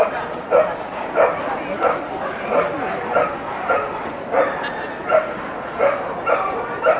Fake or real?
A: real